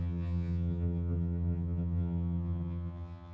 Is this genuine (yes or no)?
no